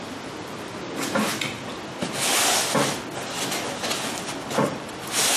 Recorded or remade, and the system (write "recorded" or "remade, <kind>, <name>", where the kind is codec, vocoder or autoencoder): recorded